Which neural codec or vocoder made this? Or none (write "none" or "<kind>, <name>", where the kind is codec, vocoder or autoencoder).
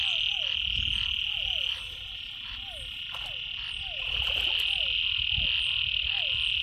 none